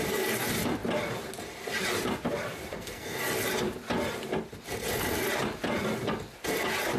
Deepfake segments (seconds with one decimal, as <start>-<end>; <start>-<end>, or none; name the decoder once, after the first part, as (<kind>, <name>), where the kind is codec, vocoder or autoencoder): 2.7-3.2 (codec, SNAC)